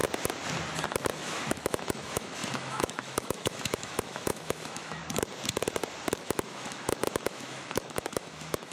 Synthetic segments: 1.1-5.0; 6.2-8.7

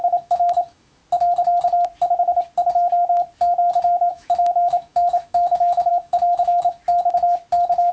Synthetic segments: 0.0-1.0; 4.1-6.8

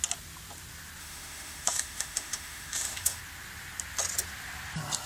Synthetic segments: 1.0-3.2

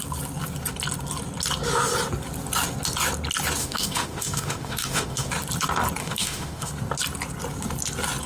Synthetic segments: 3.6-5.3; 6.0-6.7